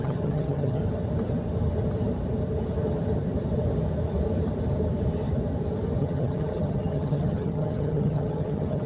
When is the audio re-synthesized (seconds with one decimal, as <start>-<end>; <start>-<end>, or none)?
0.0-0.8; 6.0-8.9